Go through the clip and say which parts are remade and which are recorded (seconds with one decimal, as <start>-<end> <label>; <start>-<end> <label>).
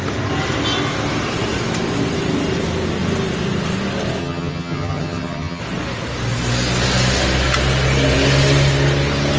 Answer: 0.0-4.2 recorded; 4.2-5.6 remade; 5.6-9.4 recorded